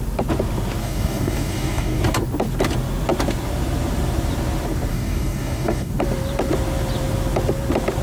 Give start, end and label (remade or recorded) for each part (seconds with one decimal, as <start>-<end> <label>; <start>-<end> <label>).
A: 0.0-0.8 recorded; 0.8-2.0 remade; 2.0-4.9 recorded; 4.9-5.9 remade; 5.9-8.0 recorded